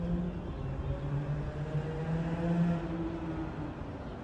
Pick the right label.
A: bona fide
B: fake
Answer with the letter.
A